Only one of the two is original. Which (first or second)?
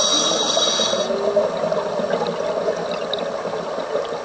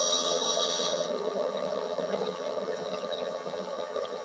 first